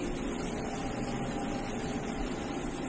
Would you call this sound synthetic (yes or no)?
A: yes